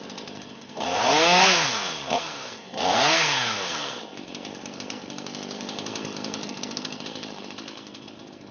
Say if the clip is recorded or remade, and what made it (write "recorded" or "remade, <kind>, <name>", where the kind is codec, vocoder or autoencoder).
remade, codec, SNAC